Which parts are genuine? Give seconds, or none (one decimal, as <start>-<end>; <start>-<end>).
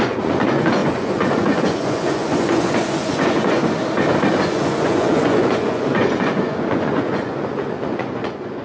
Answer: 3.6-4.4